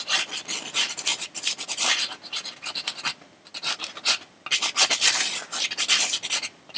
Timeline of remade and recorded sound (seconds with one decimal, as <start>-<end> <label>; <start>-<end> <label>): 0.0-6.8 recorded